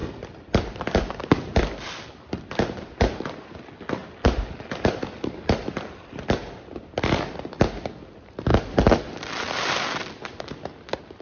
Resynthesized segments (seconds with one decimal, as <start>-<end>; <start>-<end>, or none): 0.0-3.2; 4.0-6.7; 8.5-10.4